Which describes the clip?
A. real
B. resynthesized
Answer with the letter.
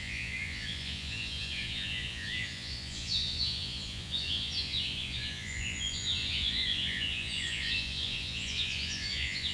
B